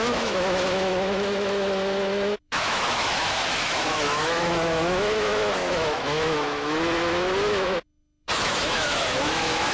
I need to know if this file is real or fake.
fake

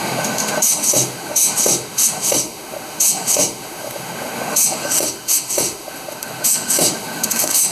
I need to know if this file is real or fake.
fake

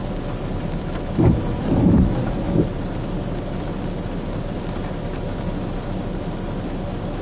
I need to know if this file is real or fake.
real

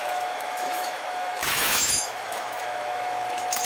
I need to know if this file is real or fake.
fake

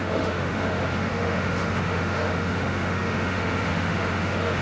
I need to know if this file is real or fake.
fake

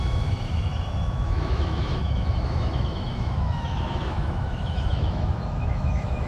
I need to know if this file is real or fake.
fake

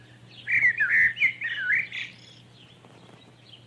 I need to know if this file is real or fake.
real